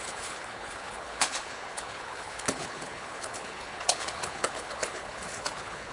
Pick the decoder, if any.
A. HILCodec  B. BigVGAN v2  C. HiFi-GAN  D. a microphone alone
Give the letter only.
A